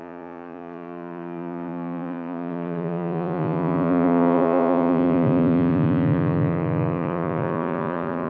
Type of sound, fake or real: fake